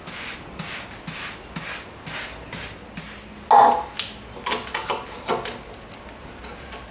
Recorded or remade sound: recorded